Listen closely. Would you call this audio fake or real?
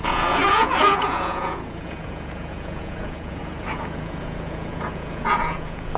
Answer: fake